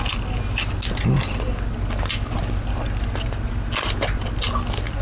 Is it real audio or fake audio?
real